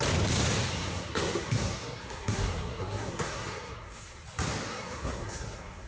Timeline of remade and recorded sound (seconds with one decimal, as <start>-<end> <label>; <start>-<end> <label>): 0.0-0.7 recorded; 0.7-4.2 remade; 4.2-4.7 recorded; 4.7-5.9 remade

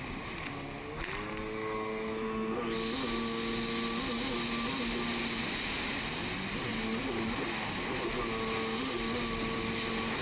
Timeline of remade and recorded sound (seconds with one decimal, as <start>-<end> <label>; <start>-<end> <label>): 0.0-10.2 recorded

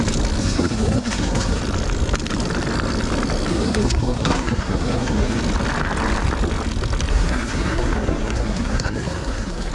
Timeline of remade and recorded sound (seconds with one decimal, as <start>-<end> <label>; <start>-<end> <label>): 0.0-0.4 recorded; 0.4-1.6 remade; 1.6-3.5 recorded; 3.5-5.4 remade; 5.4-7.1 recorded; 7.1-9.7 remade

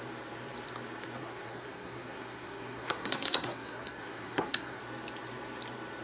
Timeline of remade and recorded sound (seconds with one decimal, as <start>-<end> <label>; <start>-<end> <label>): 0.0-1.2 recorded; 1.2-4.8 remade; 4.8-6.0 recorded

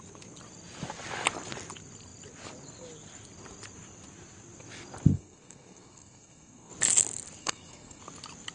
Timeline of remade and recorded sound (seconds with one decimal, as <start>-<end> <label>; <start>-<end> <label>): 0.0-5.1 recorded; 5.1-6.7 remade; 6.7-7.4 recorded; 7.4-8.0 remade; 8.0-8.5 recorded

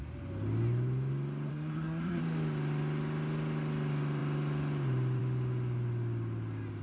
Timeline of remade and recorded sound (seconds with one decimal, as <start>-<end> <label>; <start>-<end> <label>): 0.0-1.5 recorded; 1.5-2.2 remade; 2.2-6.8 recorded

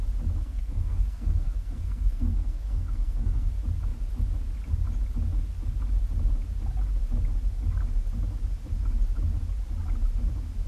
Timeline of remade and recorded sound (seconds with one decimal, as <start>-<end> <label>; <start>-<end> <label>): 0.0-0.4 recorded; 0.4-3.5 remade; 3.5-10.7 recorded

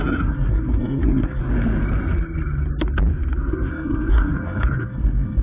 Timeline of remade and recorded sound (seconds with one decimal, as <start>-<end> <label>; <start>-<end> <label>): 0.0-1.4 remade; 1.4-3.5 recorded; 3.5-5.4 remade